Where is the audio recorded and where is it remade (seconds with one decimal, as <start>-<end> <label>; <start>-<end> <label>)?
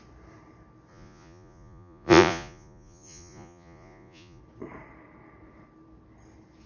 0.0-0.9 recorded; 0.9-4.4 remade; 4.4-6.7 recorded